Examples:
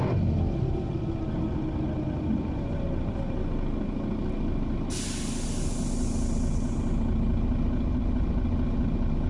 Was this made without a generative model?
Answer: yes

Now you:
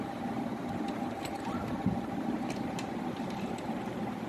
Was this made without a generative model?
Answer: no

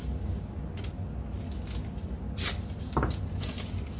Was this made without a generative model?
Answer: yes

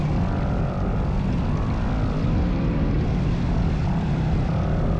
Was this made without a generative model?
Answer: yes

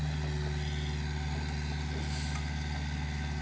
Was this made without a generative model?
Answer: yes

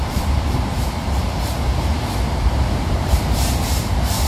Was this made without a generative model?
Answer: no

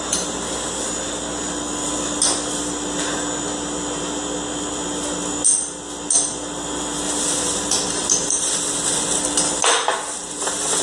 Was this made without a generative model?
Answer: yes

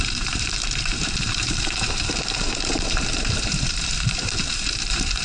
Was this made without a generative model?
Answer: no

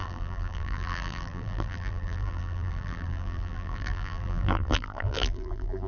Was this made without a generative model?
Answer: no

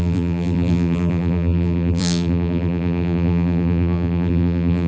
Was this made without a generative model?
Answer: no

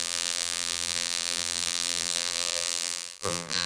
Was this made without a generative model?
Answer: no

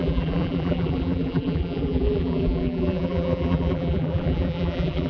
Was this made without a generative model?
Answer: no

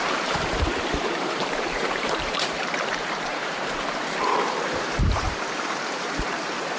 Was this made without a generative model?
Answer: no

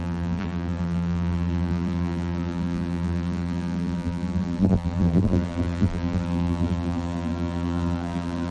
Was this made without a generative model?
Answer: no